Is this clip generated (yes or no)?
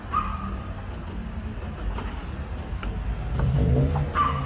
no